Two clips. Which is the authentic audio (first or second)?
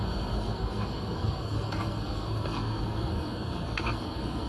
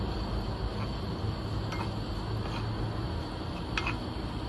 second